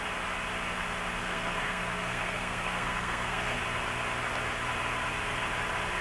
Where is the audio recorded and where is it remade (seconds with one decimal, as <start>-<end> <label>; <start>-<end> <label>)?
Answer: 0.0-1.2 recorded; 1.2-3.6 remade; 3.6-6.0 recorded